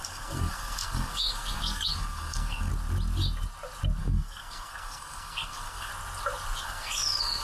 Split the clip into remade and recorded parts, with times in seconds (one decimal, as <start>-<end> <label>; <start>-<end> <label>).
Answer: 0.0-2.7 remade; 2.7-4.0 recorded; 4.0-5.9 remade; 5.9-6.6 recorded; 6.6-7.4 remade